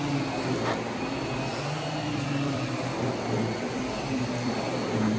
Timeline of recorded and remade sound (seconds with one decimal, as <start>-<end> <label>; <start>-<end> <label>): 0.0-1.5 recorded; 1.5-4.6 remade; 4.6-5.2 recorded